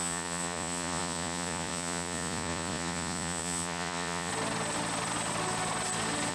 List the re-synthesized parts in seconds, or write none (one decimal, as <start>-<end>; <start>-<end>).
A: 0.0-4.3

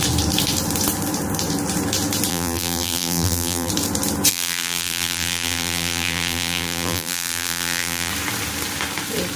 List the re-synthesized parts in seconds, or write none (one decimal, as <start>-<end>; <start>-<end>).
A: 2.3-3.7; 4.3-8.1

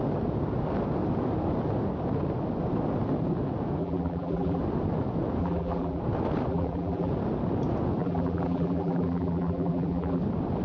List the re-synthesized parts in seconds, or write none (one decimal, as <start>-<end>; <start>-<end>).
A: 3.8-4.6; 5.4-6.0; 6.5-7.1; 8.0-10.2

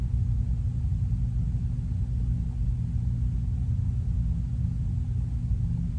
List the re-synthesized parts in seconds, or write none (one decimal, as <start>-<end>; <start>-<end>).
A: none

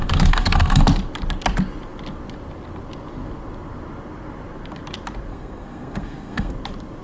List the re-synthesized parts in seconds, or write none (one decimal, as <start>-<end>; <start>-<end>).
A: 0.0-0.8; 5.3-6.5